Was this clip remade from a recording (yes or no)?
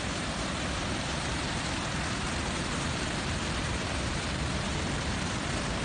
yes